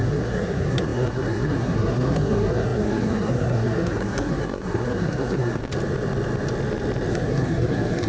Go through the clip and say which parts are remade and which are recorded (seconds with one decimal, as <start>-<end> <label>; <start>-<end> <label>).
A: 0.0-5.6 remade; 5.6-7.1 recorded; 7.1-8.1 remade